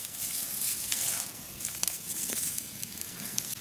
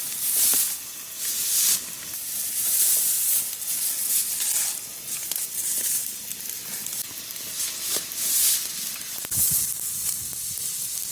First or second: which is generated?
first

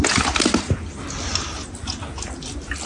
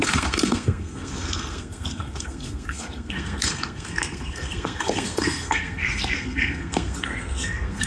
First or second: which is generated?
second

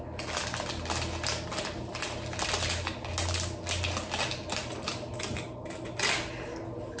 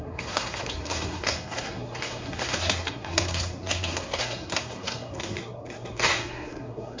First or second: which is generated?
second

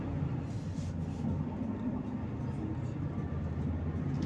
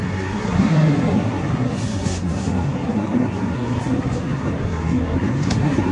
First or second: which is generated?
second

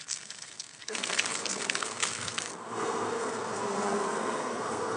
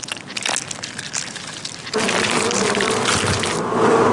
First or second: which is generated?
first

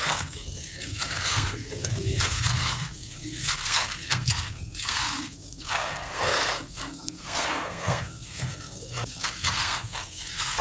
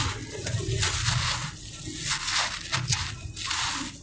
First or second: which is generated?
first